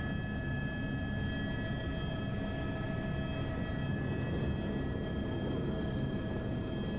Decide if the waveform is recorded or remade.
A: recorded